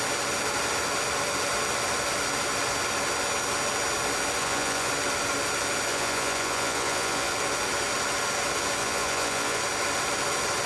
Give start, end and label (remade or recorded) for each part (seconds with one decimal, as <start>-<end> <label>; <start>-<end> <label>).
0.0-4.4 recorded; 4.4-4.9 remade; 4.9-5.9 recorded; 5.9-7.3 remade; 7.3-8.8 recorded; 8.8-9.6 remade; 9.6-10.7 recorded